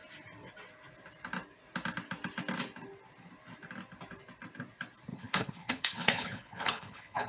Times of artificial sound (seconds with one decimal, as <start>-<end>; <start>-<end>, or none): 5.1-7.3

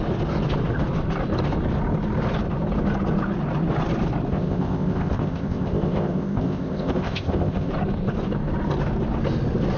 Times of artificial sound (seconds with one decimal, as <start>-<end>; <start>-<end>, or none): 4.3-7.7

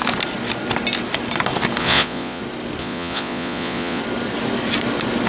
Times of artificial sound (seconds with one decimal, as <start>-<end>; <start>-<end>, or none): 1.8-2.4; 2.8-4.0